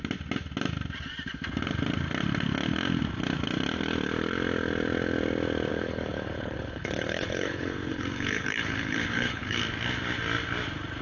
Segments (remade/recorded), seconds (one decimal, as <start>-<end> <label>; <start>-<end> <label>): 0.0-5.7 recorded; 5.7-9.6 remade; 9.6-11.0 recorded